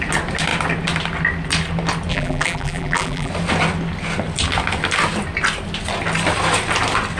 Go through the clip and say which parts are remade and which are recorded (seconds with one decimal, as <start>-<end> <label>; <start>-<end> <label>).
0.0-2.1 recorded; 2.1-3.3 remade; 3.3-7.2 recorded